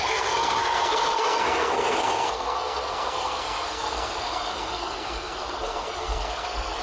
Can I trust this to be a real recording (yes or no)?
no